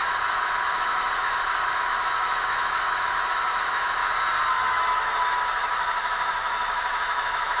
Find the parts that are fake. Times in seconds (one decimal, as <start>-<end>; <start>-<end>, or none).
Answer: 0.0-4.0; 4.5-7.6